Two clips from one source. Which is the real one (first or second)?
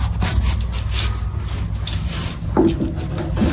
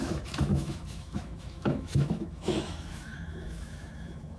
first